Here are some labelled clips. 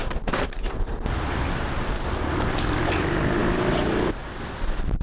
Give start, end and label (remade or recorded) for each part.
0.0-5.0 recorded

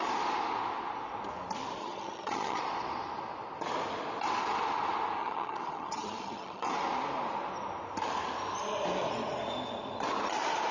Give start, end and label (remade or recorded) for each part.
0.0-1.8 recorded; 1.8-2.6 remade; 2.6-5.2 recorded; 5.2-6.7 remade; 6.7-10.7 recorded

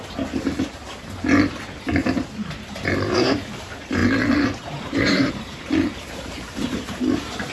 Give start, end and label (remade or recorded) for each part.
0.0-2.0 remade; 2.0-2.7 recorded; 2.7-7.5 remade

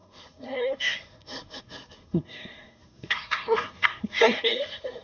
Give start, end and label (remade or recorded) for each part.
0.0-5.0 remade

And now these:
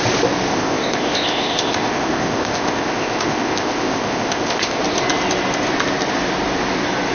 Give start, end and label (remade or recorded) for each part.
0.0-0.5 recorded; 0.5-4.8 remade; 4.8-7.1 recorded

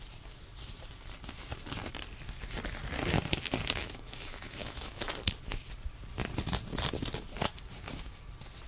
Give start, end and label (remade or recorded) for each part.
0.0-3.8 recorded; 3.8-5.1 remade; 5.1-8.7 recorded